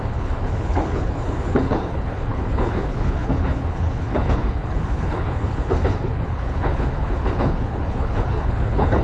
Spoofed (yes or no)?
yes